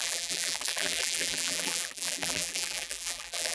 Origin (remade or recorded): remade